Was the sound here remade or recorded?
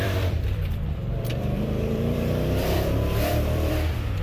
remade